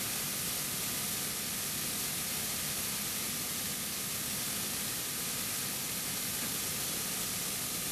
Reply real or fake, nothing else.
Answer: real